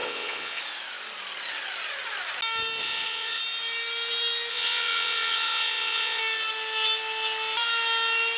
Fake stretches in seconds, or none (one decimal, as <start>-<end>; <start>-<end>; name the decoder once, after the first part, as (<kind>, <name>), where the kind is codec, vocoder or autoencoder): 0.0-0.6 (vocoder, WaveNeXt); 2.8-3.4; 4.5-6.2